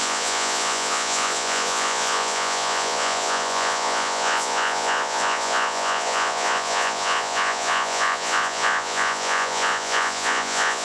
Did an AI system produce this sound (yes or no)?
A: yes